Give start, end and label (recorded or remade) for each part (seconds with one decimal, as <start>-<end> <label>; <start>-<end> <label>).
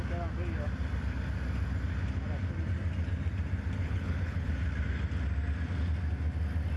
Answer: 0.0-3.8 recorded; 3.8-4.5 remade; 4.5-6.8 recorded